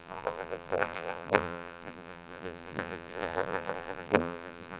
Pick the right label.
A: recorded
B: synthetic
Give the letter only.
B